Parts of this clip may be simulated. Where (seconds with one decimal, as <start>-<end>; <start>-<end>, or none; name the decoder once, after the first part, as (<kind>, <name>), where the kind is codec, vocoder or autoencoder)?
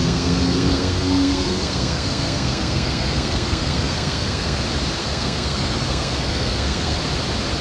0.0-4.6 (codec, SNAC); 5.0-7.0